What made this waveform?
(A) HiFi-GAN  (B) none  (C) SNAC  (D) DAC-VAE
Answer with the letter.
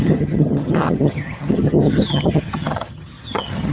A